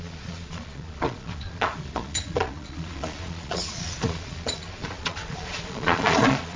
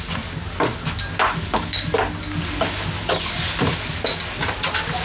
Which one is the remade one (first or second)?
first